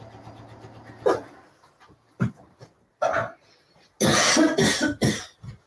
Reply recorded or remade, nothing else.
recorded